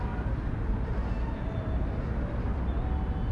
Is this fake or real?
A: real